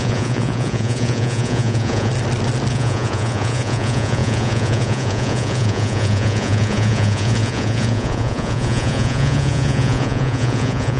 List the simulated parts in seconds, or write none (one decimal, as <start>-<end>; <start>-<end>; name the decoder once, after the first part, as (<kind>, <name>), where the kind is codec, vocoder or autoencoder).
0.0-2.1 (vocoder, Vocos); 2.7-11.0